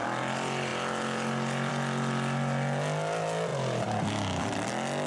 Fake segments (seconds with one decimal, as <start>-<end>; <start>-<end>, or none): none